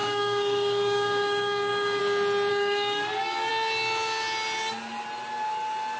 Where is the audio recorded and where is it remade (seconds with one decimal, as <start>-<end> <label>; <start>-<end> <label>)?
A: 0.0-2.0 remade; 2.0-2.5 recorded; 2.5-3.5 remade; 3.5-6.0 recorded